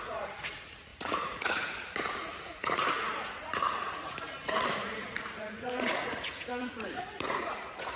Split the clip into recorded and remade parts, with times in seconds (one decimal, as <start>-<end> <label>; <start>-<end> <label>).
0.0-8.0 remade